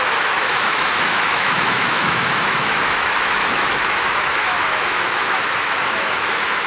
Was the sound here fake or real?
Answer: fake